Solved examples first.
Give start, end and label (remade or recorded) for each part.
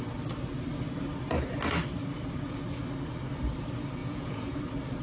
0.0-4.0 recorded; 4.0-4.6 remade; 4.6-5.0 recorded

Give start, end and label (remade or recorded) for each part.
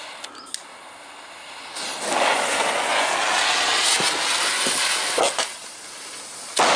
0.0-2.3 recorded; 2.3-3.1 remade; 3.1-6.8 recorded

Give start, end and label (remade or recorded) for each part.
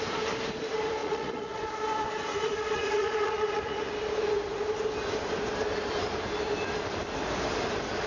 0.0-1.0 recorded; 1.0-1.6 remade; 1.6-2.3 recorded; 2.3-3.9 remade; 3.9-8.1 recorded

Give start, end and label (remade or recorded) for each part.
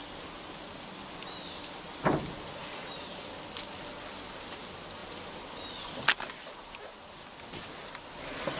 0.0-8.6 recorded